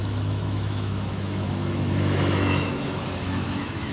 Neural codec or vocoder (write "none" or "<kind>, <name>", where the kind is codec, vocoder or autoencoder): autoencoder, DAC-VAE